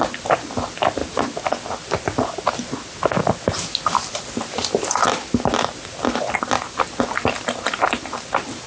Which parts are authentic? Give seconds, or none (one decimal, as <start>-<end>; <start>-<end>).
0.0-8.7